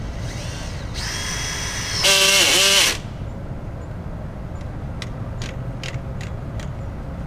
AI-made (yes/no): no